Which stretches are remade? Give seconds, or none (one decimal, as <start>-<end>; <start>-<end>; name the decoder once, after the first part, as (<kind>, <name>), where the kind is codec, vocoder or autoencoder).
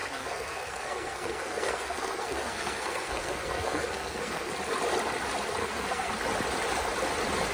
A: 0.0-4.5 (codec, SNAC); 5.6-6.1